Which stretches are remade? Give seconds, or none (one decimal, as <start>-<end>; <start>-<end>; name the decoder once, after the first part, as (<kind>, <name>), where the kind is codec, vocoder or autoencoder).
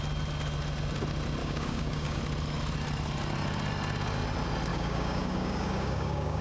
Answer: 1.4-2.2 (codec, DAC); 4.7-6.4